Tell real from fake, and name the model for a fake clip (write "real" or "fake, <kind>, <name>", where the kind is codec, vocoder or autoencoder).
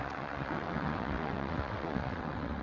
fake, vocoder, WaveNeXt